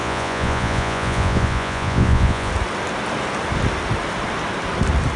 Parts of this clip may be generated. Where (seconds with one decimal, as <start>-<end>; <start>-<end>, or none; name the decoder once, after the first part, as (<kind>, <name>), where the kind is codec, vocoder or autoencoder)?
0.0-2.5 (vocoder, Vocos)